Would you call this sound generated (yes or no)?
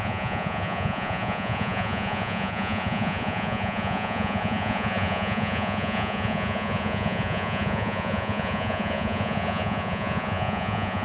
yes